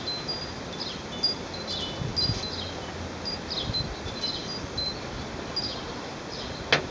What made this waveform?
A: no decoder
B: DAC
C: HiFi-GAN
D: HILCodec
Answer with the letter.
A